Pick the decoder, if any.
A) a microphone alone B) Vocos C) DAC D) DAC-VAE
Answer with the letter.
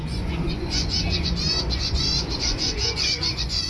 B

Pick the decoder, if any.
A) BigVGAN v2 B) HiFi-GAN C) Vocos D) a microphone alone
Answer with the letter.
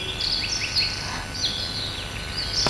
D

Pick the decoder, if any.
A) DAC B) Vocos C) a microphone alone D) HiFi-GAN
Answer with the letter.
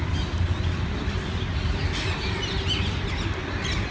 C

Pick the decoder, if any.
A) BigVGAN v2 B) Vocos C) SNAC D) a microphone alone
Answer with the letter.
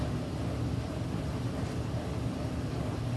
D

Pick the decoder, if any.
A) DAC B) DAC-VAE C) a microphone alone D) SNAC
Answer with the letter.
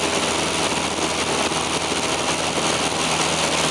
C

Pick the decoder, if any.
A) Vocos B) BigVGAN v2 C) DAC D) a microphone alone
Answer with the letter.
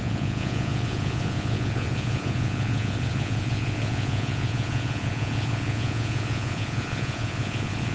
A